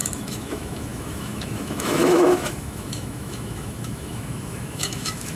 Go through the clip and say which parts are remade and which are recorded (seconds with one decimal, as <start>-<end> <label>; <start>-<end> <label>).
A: 0.0-5.4 remade